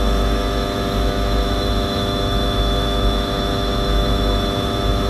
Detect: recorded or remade remade